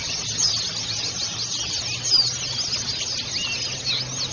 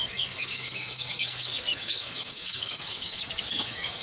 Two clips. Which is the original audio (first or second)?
first